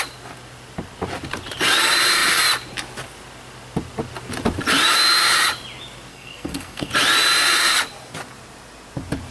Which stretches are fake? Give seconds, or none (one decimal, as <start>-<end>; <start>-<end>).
6.1-6.9